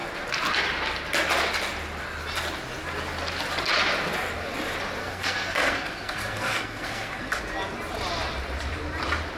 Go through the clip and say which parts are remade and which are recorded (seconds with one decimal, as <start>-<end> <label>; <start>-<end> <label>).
0.0-5.0 recorded; 5.0-7.4 remade; 7.4-9.4 recorded